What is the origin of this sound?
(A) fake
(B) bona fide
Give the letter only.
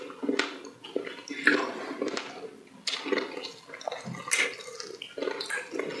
B